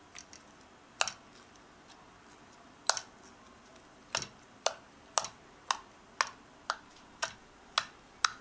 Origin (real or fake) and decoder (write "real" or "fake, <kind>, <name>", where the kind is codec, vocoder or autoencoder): real